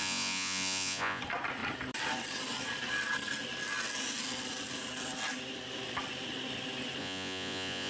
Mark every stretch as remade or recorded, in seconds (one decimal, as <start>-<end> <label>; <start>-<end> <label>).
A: 0.0-1.2 remade; 1.2-7.0 recorded; 7.0-7.9 remade